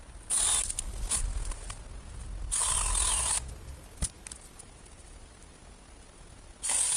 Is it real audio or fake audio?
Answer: real